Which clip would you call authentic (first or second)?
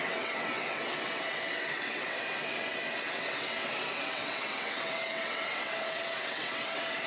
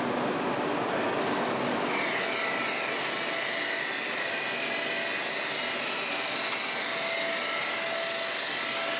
second